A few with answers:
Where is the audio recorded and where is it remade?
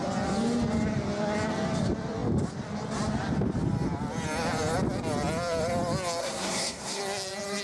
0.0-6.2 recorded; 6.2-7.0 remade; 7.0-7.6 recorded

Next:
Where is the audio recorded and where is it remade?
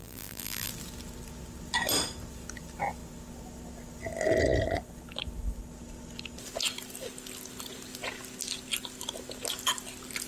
0.0-0.7 remade; 0.7-10.3 recorded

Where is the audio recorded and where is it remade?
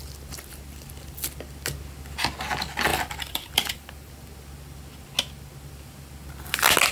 0.0-2.9 recorded; 2.9-4.1 remade; 4.1-6.9 recorded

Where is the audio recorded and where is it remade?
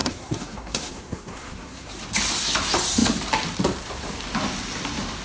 0.0-1.9 remade; 1.9-5.2 recorded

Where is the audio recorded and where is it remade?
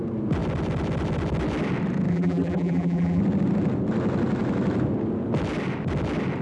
0.0-2.1 recorded; 2.1-3.2 remade; 3.2-6.4 recorded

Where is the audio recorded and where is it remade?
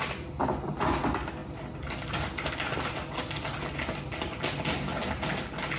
0.0-5.8 recorded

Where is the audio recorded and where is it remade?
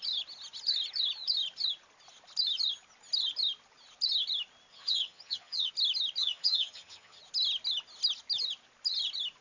0.0-4.7 recorded; 4.7-5.7 remade; 5.7-6.2 recorded; 6.2-7.2 remade; 7.2-9.4 recorded